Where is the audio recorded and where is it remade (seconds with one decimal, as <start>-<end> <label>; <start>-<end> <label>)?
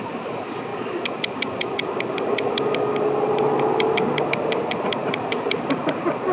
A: 0.0-6.3 recorded